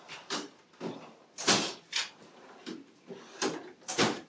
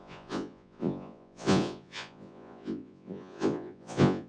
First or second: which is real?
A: first